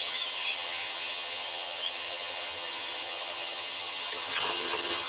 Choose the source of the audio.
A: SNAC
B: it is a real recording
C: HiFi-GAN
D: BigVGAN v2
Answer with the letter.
C